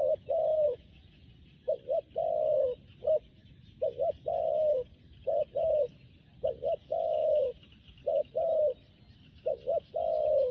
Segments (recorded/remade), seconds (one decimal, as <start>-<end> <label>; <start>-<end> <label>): 0.0-0.5 recorded; 0.5-1.3 remade; 1.3-10.5 recorded